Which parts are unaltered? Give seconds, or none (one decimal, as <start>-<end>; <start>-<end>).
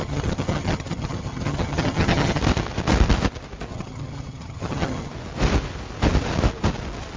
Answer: 2.4-3.7; 5.1-7.2